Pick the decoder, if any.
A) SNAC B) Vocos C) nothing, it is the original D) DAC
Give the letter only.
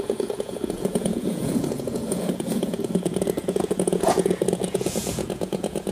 B